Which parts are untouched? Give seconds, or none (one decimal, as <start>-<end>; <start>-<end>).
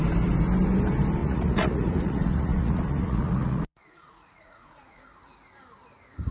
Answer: 0.0-1.2; 5.0-6.3